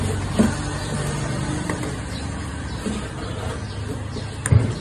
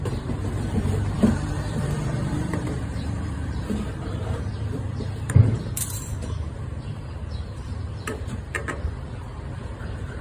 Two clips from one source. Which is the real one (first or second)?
first